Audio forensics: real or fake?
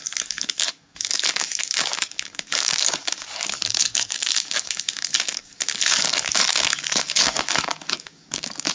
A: fake